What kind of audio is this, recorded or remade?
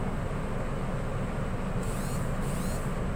recorded